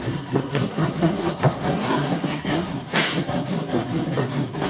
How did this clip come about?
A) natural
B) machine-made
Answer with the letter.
B